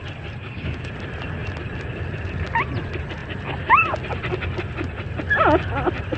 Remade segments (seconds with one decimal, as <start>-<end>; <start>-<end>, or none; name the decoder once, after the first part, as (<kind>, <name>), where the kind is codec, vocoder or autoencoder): 0.4-0.9 (codec, DAC)